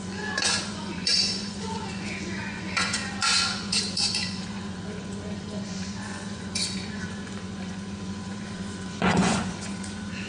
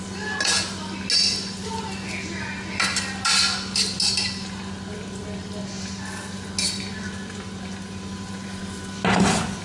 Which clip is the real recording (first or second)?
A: second